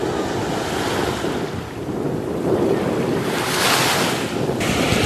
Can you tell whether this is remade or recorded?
recorded